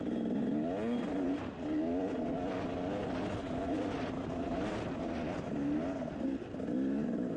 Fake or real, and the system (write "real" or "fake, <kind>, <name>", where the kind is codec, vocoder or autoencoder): real